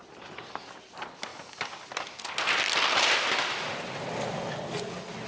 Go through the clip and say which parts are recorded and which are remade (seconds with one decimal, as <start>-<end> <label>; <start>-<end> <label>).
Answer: 0.0-5.3 recorded